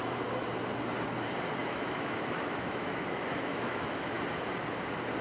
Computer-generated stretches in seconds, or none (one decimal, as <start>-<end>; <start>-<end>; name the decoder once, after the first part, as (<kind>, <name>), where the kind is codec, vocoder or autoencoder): 1.6-4.2 (autoencoder, DAC-VAE)